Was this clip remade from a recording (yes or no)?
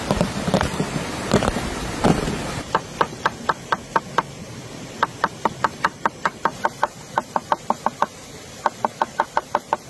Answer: yes